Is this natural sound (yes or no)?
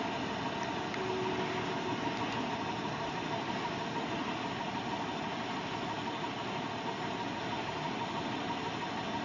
yes